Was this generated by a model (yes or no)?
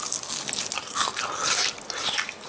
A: no